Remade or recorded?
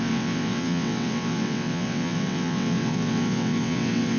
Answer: remade